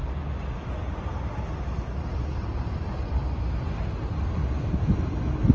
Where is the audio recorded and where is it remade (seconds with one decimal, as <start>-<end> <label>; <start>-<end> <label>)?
0.0-5.5 recorded